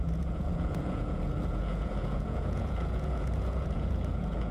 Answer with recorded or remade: remade